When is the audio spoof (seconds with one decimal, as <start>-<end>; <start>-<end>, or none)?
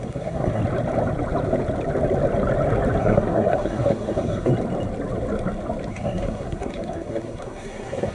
0.0-0.6; 3.0-4.5; 5.9-8.1